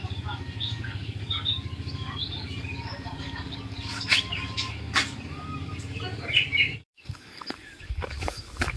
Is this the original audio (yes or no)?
no